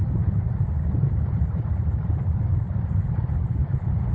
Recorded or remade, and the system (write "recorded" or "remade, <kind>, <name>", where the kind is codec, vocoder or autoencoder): recorded